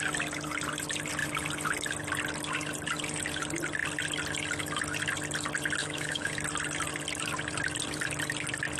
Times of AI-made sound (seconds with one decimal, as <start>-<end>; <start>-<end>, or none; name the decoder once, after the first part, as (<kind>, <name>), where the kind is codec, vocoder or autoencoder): 5.8-6.3 (autoencoder, DAC-VAE)